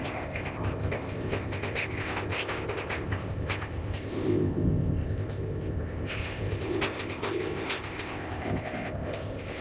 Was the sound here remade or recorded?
remade